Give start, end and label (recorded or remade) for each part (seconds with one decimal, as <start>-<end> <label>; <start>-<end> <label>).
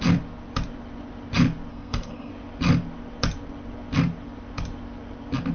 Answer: 0.0-1.7 recorded; 1.7-2.3 remade; 2.3-5.5 recorded